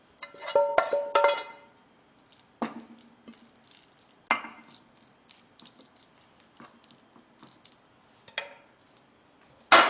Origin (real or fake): real